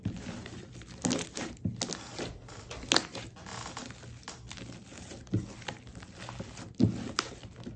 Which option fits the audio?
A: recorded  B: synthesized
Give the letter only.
A